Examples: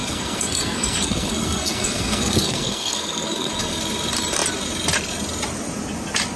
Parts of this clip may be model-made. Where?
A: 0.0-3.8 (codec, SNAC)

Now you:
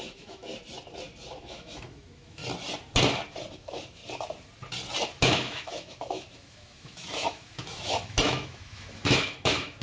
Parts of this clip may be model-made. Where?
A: 0.0-0.5 (autoencoder, DAC-VAE); 1.4-2.4; 3.5-4.0; 5.2-9.8

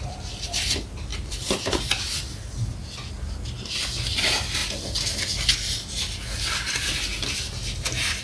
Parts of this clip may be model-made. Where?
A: 1.1-2.2 (vocoder, BigVGAN v2)

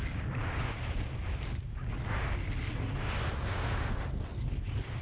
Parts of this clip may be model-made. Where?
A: none